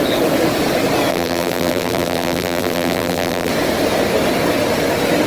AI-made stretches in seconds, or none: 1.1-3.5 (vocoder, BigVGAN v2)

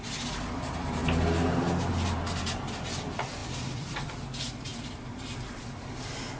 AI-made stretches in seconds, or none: 3.4-4.2 (vocoder, BigVGAN v2)

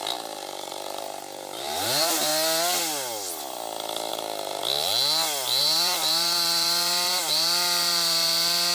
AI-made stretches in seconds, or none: 0.0-2.3 (vocoder, BigVGAN v2); 4.1-4.6; 5.6-8.7

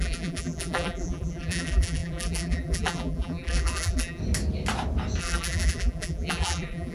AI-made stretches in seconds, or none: 0.0-4.2 (vocoder, BigVGAN v2); 5.2-6.9

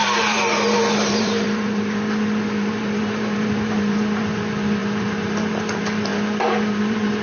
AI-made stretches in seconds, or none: 0.0-7.2 (vocoder, BigVGAN v2)

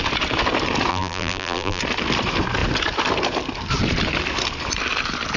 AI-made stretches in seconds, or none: 0.9-1.8 (vocoder, BigVGAN v2)

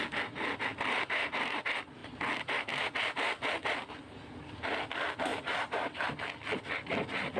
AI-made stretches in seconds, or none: 0.7-1.6 (vocoder, BigVGAN v2); 5.3-6.1

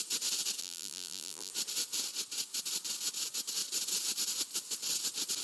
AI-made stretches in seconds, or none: 0.6-1.5 (vocoder, BigVGAN v2)